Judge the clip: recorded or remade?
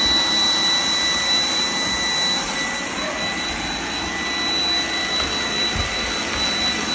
recorded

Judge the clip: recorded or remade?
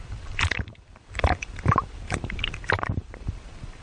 remade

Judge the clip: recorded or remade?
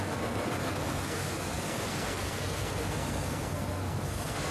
remade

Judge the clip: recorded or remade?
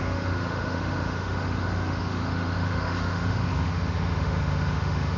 remade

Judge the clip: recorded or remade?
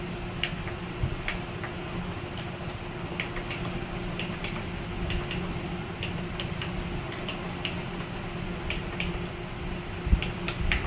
recorded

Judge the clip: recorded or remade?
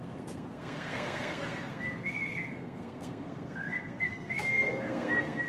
remade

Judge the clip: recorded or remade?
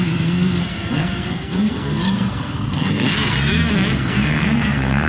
remade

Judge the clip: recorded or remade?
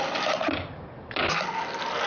recorded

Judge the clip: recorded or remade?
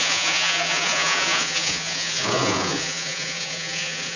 remade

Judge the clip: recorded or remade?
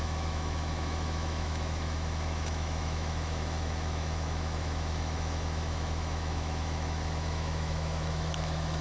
remade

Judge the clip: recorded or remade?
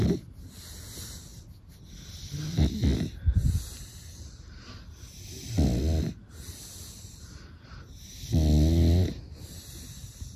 recorded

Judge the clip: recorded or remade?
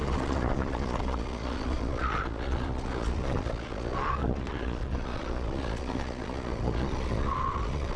remade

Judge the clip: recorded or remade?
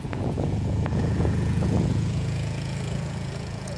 remade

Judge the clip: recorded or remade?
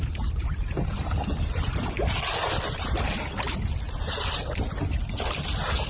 recorded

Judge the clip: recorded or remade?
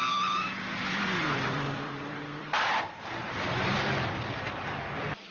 remade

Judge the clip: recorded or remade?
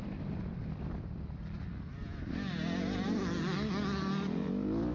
recorded